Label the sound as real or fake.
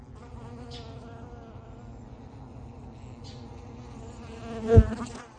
real